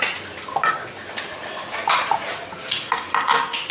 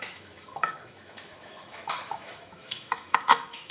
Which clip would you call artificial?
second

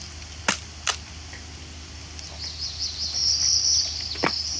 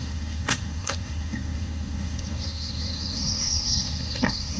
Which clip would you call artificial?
second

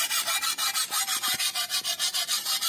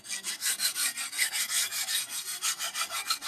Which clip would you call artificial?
second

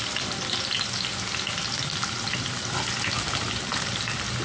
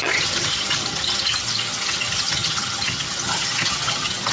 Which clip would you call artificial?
second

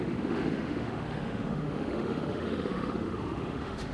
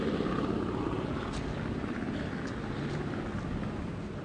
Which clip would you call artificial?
first